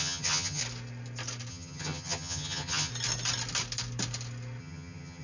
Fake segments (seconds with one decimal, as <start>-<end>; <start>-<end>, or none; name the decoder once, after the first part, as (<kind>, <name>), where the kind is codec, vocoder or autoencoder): 0.0-0.6 (vocoder, HiFi-GAN); 1.5-2.9; 4.6-5.2